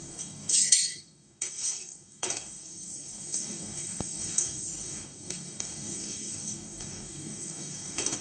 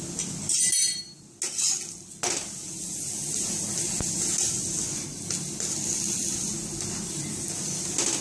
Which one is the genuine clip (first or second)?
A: second